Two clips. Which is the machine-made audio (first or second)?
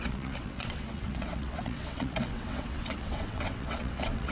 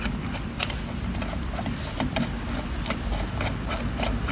first